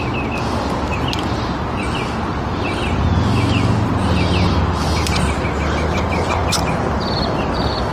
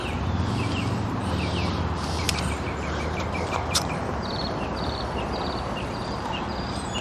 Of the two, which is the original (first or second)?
first